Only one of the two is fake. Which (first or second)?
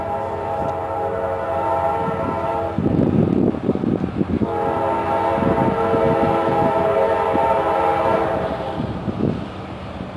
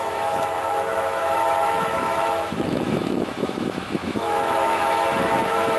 second